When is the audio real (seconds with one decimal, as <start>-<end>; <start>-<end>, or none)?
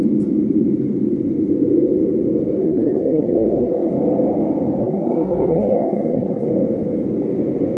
0.0-2.6; 3.9-4.8; 6.5-7.8